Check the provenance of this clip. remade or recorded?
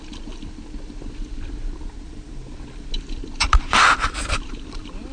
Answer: recorded